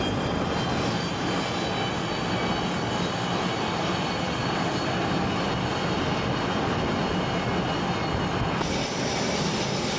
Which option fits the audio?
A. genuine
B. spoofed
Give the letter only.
A